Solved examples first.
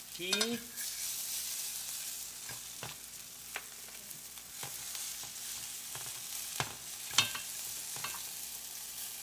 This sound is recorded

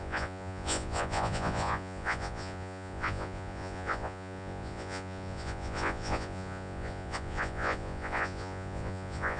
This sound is remade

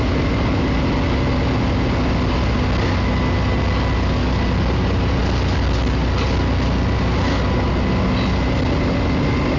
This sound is recorded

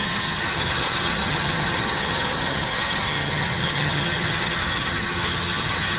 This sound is remade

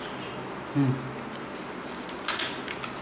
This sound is recorded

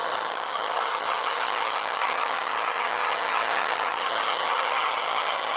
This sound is remade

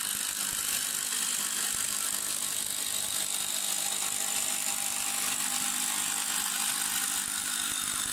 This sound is recorded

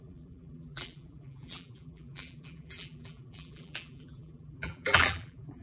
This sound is remade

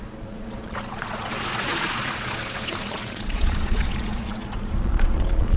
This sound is remade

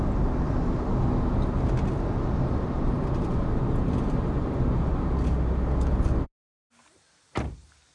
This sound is recorded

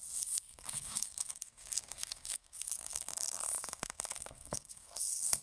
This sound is remade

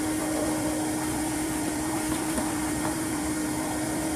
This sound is remade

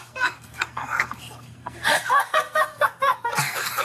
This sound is remade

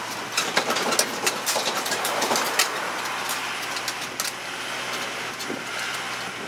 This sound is recorded